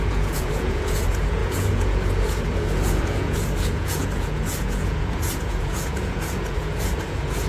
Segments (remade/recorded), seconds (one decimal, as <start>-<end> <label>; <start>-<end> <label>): 0.0-7.5 remade